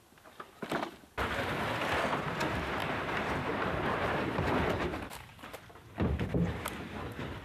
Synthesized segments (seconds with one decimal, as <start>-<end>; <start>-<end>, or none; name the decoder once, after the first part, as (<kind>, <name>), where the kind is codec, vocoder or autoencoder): 2.8-4.4 (vocoder, BigVGAN v2)